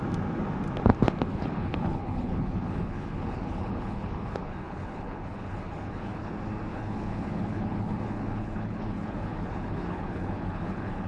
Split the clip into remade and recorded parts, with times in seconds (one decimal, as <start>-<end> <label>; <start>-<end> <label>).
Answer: 0.0-1.3 recorded; 1.3-6.3 remade; 6.3-6.7 recorded; 6.7-11.1 remade